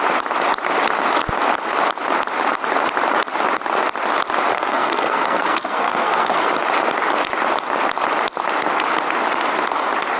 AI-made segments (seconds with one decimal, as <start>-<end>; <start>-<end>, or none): 4.5-6.5